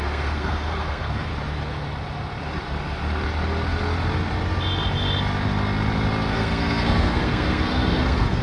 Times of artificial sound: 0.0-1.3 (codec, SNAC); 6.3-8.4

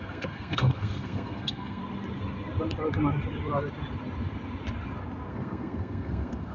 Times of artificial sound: 0.0-1.8 (codec, SNAC); 5.3-6.5

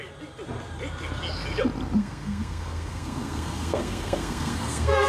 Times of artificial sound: 2.0-5.1 (codec, SNAC)